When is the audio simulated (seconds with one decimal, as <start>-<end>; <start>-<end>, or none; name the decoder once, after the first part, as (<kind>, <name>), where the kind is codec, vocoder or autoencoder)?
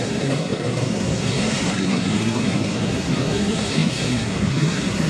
0.0-5.1 (codec, SNAC)